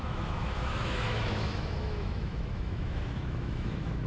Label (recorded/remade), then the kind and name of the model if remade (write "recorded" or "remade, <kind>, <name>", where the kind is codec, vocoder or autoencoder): remade, autoencoder, DAC-VAE